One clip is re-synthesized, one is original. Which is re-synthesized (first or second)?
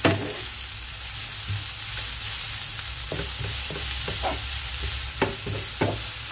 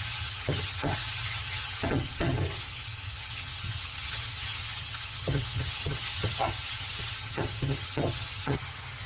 second